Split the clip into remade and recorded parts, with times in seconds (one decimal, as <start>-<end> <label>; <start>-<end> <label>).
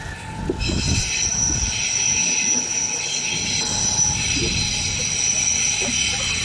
0.0-6.4 recorded